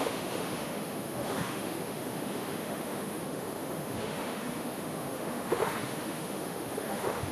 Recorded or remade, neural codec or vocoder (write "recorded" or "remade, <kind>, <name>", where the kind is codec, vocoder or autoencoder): remade, autoencoder, DAC-VAE